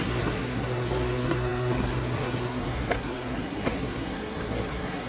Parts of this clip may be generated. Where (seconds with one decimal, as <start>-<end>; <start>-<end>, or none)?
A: 0.0-5.1